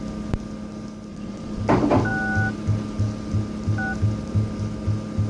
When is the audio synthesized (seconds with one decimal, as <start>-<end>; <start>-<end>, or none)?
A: 1.1-1.6